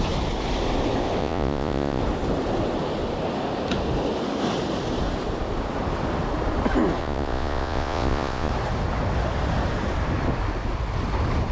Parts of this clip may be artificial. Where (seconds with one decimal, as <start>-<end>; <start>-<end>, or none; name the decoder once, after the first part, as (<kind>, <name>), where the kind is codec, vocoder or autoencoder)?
1.2-2.0 (vocoder, Vocos); 7.0-8.5